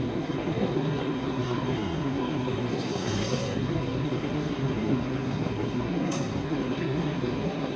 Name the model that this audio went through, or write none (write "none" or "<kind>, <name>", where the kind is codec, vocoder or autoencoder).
codec, SNAC